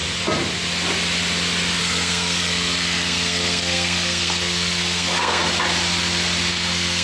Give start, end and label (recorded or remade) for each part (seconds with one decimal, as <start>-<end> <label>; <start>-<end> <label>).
0.0-1.8 recorded; 1.8-5.4 remade; 5.4-6.5 recorded; 6.5-7.0 remade